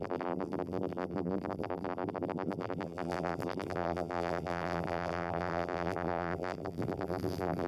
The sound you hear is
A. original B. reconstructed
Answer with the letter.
B